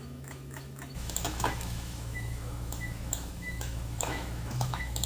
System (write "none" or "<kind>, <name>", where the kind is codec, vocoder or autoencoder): autoencoder, DAC-VAE